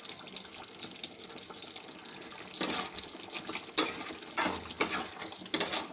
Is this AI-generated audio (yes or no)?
no